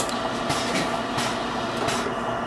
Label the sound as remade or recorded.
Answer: recorded